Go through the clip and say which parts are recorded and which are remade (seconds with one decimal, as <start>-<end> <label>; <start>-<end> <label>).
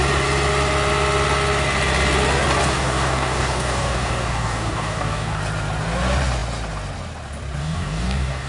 0.0-2.7 recorded; 2.7-5.4 remade; 5.4-7.6 recorded; 7.6-8.5 remade